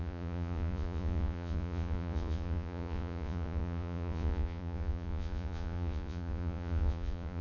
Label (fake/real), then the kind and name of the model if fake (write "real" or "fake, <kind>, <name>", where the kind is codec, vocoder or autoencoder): fake, vocoder, Vocos